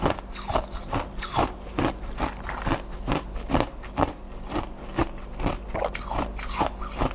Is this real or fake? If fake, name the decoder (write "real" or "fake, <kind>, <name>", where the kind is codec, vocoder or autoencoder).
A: real